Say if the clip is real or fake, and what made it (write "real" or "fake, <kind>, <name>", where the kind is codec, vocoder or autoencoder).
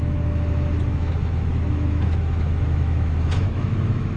fake, autoencoder, DAC-VAE